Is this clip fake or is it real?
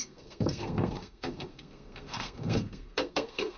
fake